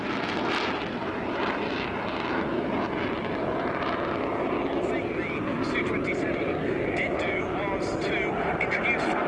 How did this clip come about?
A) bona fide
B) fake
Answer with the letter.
A